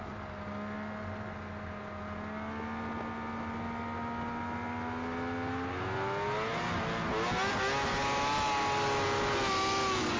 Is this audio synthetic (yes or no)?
no